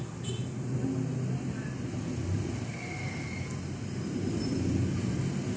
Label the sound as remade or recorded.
recorded